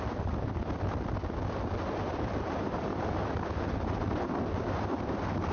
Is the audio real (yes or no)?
yes